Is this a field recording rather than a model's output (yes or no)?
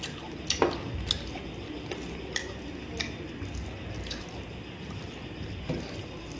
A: yes